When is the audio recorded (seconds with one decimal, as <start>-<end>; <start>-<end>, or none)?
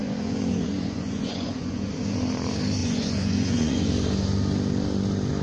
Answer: 1.9-2.8; 3.9-5.4